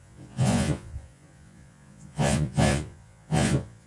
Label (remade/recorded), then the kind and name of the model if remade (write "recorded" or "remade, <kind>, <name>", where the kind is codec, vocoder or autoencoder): remade, vocoder, Vocos